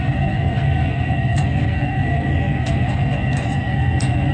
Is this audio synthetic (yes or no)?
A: yes